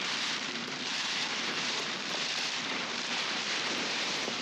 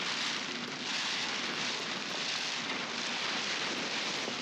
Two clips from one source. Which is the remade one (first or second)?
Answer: first